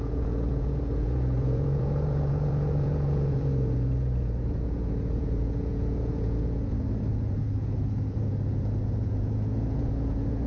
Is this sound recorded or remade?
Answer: remade